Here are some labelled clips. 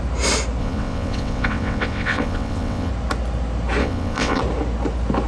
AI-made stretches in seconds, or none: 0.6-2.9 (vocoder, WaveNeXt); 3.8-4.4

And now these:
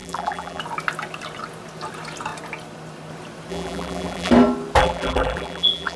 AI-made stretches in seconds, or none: 0.0-0.6 (vocoder, BigVGAN v2); 3.5-4.3; 4.8-6.0

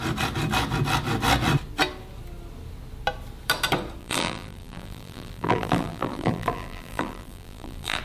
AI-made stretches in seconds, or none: 4.0-8.0 (vocoder, BigVGAN v2)

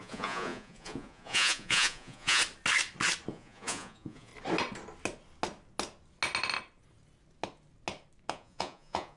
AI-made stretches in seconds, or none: 0.0-2.4 (vocoder, Vocos); 3.3-4.3; 8.3-9.2

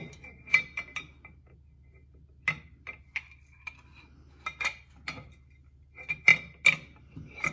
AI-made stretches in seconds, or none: none

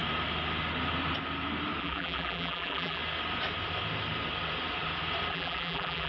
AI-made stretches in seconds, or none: 1.8-3.0 (vocoder, BigVGAN v2); 5.3-6.1

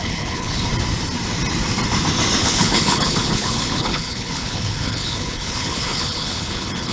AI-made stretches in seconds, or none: 0.0-0.7 (codec, HILCodec); 2.4-6.9

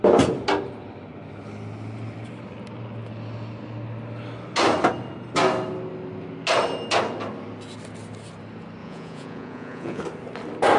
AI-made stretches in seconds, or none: 8.8-10.0 (vocoder, Vocos)